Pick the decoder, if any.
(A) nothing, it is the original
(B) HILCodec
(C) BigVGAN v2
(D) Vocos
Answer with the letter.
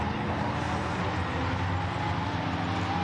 A